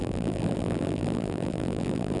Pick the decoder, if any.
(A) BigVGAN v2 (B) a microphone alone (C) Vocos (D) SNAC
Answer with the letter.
A